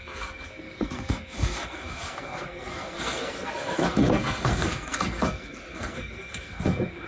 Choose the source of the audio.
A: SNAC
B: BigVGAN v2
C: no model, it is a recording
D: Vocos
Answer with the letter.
A